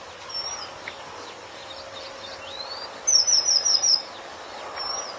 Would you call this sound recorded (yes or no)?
yes